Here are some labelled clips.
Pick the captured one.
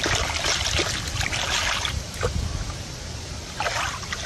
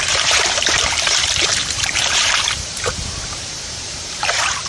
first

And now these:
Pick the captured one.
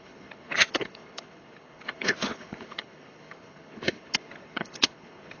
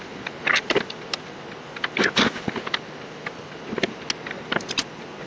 second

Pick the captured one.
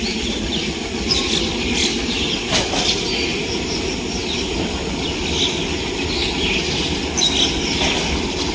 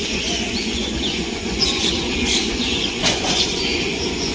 first